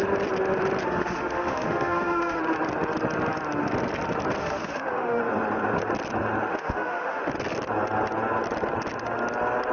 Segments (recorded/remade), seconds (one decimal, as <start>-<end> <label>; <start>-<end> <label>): 0.0-0.9 recorded; 0.9-2.4 remade; 2.4-4.4 recorded; 4.4-5.2 remade; 5.2-6.5 recorded; 6.5-7.2 remade; 7.2-9.7 recorded